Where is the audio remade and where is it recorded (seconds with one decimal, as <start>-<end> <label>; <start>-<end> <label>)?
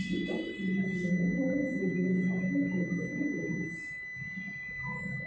0.0-5.3 recorded